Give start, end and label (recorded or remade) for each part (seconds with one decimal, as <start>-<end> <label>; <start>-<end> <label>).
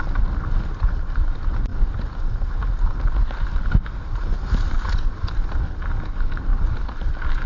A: 0.0-4.3 recorded; 4.3-5.7 remade; 5.7-6.5 recorded; 6.5-7.5 remade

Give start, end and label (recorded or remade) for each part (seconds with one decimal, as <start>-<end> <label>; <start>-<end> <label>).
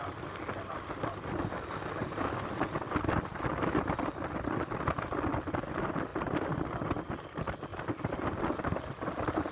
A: 0.0-9.5 recorded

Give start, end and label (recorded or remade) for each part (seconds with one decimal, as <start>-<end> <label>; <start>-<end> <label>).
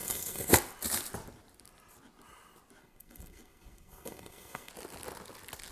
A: 0.0-0.5 remade; 0.5-2.8 recorded; 2.8-4.7 remade; 4.7-5.7 recorded